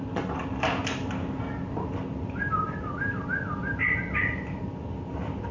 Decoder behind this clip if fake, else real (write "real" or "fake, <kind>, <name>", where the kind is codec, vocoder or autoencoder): real